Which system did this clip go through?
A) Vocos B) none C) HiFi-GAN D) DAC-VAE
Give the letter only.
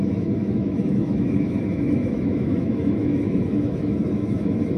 D